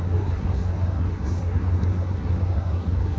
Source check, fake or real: fake